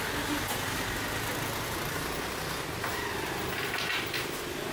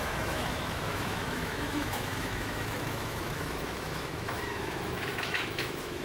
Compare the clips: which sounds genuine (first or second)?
first